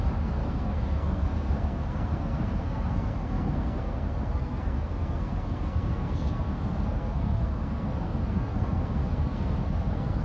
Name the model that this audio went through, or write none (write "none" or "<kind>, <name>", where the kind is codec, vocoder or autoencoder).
codec, SNAC